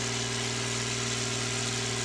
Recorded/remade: recorded